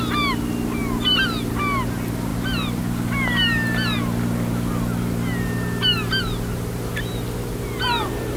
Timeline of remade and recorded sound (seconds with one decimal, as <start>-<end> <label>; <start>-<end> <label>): 0.0-8.4 recorded